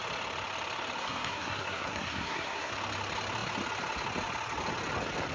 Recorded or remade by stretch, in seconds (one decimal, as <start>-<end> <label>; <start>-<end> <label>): 0.0-1.0 recorded; 1.0-2.7 remade; 2.7-5.3 recorded